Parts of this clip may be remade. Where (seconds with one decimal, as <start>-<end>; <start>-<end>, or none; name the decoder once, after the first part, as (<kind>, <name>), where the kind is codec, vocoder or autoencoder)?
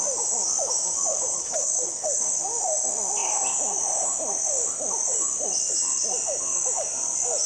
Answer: 1.1-2.4 (codec, HILCodec)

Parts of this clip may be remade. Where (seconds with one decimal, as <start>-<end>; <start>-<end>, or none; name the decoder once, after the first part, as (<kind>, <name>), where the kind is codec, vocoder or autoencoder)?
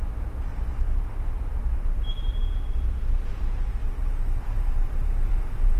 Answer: 0.5-1.1 (vocoder, BigVGAN v2); 1.5-3.3; 4.0-5.8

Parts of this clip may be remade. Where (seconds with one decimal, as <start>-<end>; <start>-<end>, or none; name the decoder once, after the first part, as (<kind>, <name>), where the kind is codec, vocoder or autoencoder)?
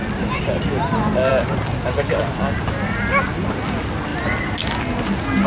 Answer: none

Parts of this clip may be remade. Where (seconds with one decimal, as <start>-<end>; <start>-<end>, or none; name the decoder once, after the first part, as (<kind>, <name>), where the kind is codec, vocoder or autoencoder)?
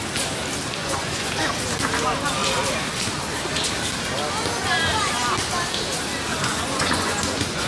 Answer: 0.8-1.3 (vocoder, Vocos); 6.3-7.7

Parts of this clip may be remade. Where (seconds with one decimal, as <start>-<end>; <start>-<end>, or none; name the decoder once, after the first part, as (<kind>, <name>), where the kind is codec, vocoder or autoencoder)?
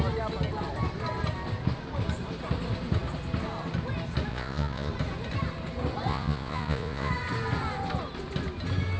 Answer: 4.3-4.9 (vocoder, Vocos); 6.1-7.1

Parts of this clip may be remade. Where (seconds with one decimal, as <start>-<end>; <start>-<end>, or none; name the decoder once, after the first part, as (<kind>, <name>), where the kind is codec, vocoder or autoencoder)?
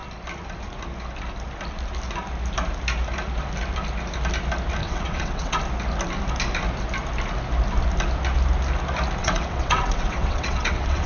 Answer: 4.8-5.6 (vocoder, WaveNeXt); 9.2-11.1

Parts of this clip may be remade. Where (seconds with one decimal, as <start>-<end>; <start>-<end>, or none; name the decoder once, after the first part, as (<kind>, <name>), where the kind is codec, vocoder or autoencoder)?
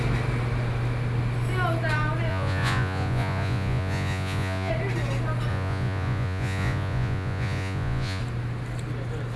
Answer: 2.3-4.7 (vocoder, Vocos); 5.5-8.2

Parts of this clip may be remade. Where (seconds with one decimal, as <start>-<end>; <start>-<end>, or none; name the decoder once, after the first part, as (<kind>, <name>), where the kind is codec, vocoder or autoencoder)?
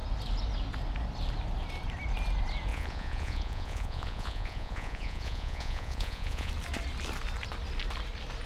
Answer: 2.7-6.5 (vocoder, Vocos)